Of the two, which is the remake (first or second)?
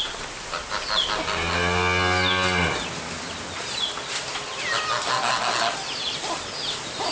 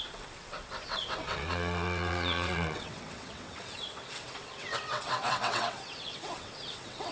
second